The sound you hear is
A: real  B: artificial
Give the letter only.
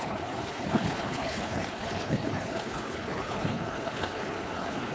B